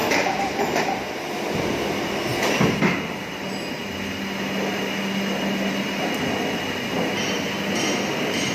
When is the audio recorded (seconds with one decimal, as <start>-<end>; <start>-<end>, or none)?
0.8-8.5